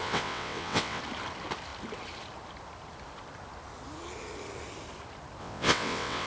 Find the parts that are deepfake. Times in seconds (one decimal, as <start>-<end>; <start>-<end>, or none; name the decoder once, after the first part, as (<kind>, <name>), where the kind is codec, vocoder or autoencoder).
0.0-1.0 (vocoder, WaveNeXt); 5.4-6.3